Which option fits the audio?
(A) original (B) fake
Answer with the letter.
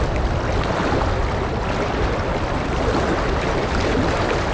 A